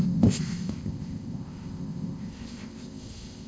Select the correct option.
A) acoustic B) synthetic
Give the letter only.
B